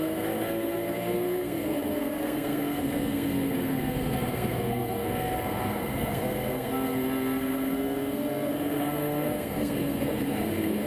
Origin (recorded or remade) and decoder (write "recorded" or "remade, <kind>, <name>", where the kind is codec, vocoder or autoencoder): remade, codec, SNAC